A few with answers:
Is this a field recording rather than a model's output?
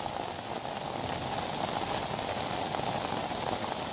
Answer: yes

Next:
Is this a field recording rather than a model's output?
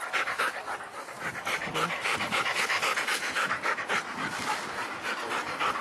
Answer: yes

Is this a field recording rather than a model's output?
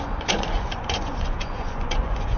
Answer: no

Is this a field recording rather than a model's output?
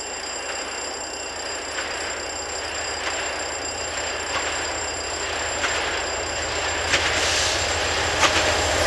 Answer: yes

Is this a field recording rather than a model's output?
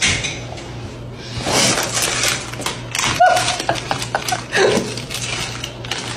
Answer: yes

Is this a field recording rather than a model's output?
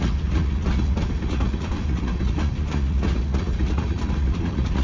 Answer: no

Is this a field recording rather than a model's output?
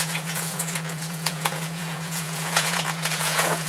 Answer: no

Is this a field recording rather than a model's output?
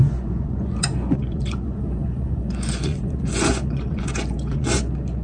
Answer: no